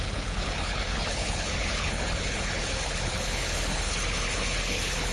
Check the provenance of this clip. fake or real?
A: fake